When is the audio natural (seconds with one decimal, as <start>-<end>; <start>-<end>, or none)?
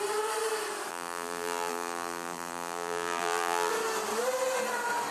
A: 0.0-0.9; 3.7-5.1